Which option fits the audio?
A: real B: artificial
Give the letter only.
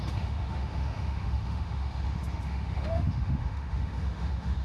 B